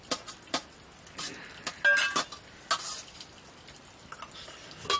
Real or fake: real